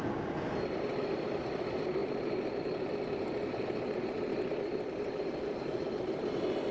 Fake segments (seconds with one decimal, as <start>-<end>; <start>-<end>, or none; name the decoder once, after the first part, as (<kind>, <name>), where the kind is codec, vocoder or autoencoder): none